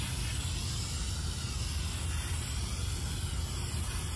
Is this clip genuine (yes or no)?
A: yes